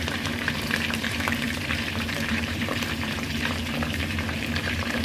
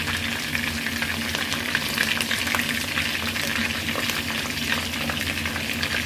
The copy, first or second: first